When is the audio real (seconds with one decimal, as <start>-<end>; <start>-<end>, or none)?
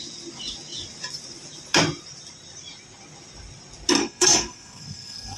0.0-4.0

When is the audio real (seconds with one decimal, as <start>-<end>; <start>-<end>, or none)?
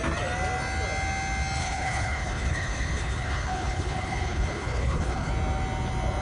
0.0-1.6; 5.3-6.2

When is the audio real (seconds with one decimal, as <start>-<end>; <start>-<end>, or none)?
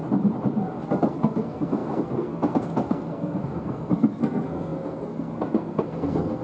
0.0-0.8